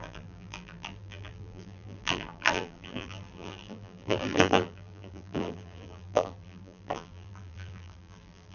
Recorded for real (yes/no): no